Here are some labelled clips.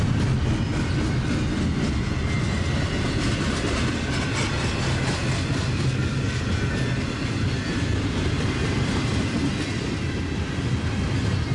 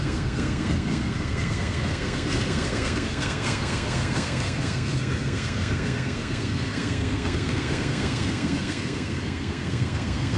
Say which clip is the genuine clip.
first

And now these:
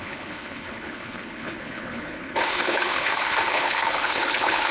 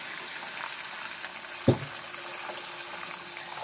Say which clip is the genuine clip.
second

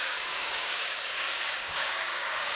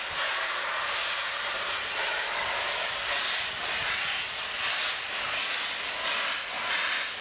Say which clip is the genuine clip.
second